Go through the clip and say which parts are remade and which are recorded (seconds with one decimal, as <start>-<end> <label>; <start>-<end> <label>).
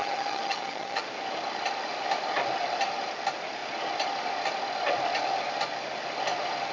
0.0-1.0 remade; 1.0-6.7 recorded